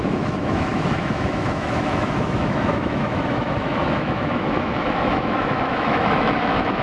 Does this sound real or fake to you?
fake